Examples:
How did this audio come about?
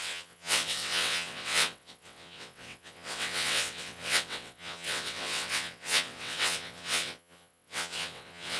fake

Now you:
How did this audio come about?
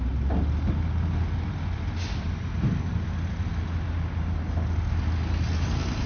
real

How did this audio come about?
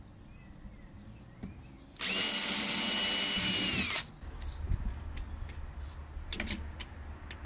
real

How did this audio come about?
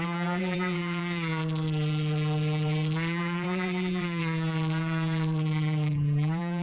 fake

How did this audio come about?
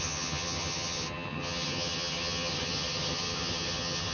fake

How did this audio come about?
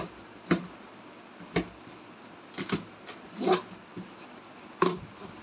real